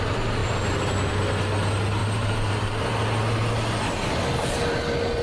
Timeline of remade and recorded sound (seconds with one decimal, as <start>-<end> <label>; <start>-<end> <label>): 0.0-2.0 recorded; 2.0-3.0 remade; 3.0-5.2 recorded